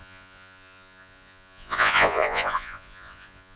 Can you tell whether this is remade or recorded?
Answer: remade